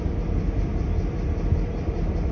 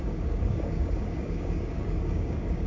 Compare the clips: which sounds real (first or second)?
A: first